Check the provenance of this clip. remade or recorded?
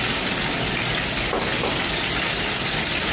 recorded